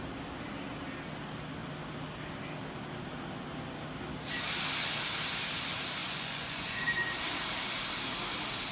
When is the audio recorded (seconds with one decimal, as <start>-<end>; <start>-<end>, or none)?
0.0-6.0; 6.8-8.7